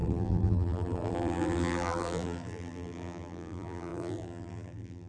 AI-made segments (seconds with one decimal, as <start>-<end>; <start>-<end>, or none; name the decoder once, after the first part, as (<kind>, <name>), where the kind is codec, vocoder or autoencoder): 0.0-5.1 (vocoder, BigVGAN v2)